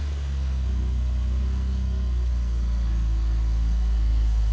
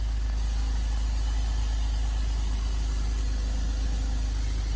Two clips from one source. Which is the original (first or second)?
second